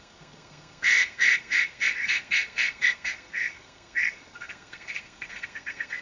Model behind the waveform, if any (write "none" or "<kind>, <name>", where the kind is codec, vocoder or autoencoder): codec, SNAC